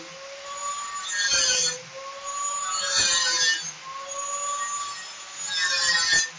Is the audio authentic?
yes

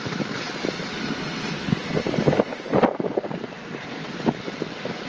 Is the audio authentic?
yes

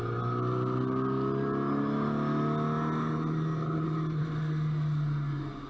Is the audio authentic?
yes